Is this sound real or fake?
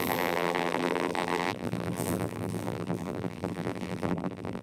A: fake